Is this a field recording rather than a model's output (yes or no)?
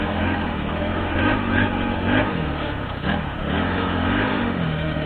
no